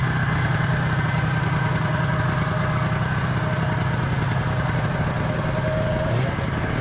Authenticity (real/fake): real